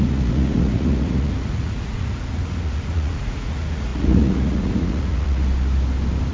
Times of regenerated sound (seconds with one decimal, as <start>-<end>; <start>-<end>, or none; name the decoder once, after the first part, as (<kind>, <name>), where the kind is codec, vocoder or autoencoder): 0.0-5.4 (vocoder, Vocos)